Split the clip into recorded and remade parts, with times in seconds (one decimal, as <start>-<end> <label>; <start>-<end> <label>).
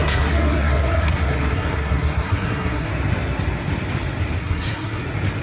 0.0-2.9 remade; 2.9-4.4 recorded; 4.4-5.0 remade; 5.0-5.4 recorded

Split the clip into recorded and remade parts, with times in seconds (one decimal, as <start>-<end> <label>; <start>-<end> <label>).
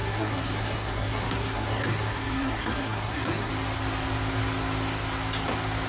0.0-3.5 remade; 3.5-5.9 recorded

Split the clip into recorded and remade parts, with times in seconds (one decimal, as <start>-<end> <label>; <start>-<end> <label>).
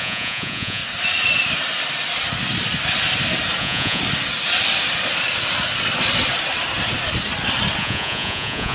0.0-0.8 remade; 0.8-3.6 recorded; 3.6-4.0 remade; 4.0-7.8 recorded; 7.8-8.7 remade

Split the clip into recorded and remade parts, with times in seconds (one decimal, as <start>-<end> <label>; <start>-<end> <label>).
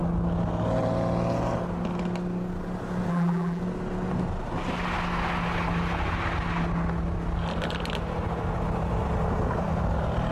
0.0-3.1 recorded; 3.1-3.6 remade; 3.6-10.3 recorded